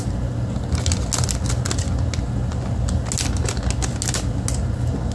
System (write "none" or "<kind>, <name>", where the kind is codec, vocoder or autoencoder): none